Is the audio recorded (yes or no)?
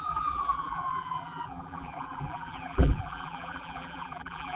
no